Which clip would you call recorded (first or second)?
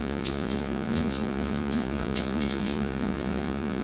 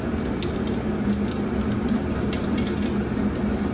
second